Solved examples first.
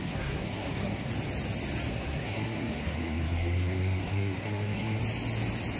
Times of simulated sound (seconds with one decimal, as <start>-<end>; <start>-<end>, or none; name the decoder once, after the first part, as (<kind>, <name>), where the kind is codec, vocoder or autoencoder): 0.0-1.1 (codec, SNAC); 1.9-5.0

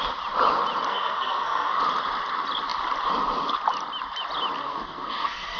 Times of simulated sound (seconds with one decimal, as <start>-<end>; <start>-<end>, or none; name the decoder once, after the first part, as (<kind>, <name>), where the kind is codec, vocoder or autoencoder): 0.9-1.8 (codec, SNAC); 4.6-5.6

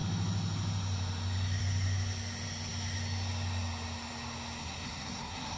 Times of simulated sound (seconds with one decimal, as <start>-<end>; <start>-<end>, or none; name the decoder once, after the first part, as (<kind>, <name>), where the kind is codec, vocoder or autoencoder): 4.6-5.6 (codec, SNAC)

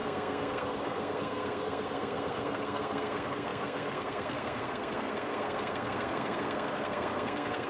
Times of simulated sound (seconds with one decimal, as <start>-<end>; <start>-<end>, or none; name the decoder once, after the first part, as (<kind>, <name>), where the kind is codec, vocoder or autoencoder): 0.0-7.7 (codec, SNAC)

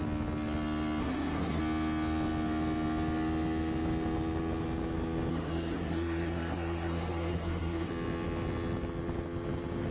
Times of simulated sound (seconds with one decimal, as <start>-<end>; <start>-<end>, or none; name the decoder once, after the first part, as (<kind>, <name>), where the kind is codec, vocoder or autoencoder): 1.0-1.6 (codec, SNAC); 5.3-7.9